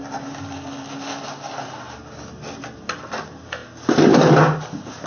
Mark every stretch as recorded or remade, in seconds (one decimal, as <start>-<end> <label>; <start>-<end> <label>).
0.0-5.1 recorded